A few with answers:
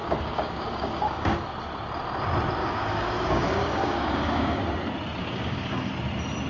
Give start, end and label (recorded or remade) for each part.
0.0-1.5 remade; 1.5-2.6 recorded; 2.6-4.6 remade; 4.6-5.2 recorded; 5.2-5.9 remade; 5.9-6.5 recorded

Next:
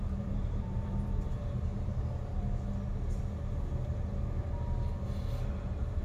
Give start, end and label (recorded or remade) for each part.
0.0-1.9 remade; 1.9-5.5 recorded; 5.5-6.0 remade

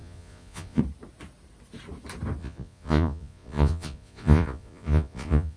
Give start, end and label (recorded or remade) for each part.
0.0-0.8 remade; 0.8-2.4 recorded; 2.4-5.6 remade

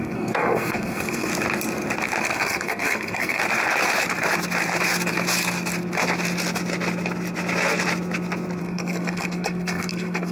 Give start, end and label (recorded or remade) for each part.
0.0-1.3 remade; 1.3-2.2 recorded; 2.2-3.4 remade; 3.4-8.6 recorded; 8.6-10.3 remade